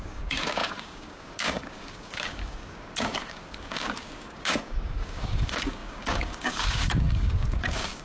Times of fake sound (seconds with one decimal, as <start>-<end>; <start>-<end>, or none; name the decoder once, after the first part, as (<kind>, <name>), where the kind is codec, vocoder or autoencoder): 0.0-8.0 (codec, DAC)